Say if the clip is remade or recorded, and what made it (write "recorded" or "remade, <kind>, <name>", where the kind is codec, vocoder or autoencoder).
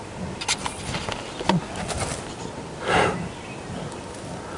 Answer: recorded